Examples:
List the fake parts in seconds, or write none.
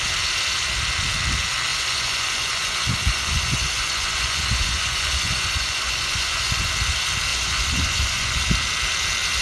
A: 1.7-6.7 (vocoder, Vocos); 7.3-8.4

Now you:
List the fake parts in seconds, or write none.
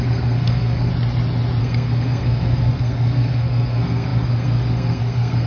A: 0.0-0.9 (codec, SNAC); 1.6-5.5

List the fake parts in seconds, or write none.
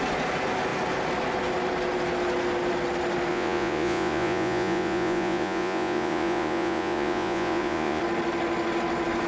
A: 3.3-8.0 (vocoder, Vocos)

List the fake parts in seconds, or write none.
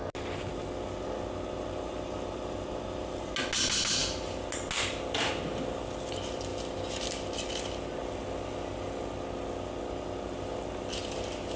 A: none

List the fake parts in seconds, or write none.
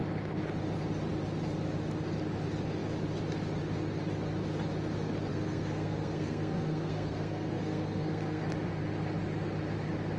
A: 5.3-8.4 (codec, SNAC)